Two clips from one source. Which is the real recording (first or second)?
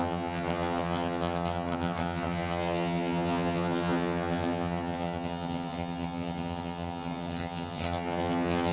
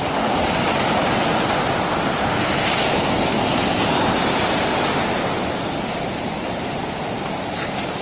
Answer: second